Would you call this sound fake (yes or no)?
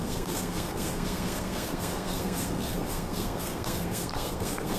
yes